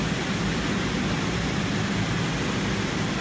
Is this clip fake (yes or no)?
no